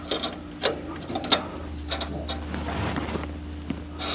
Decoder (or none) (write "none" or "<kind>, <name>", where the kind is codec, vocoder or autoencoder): none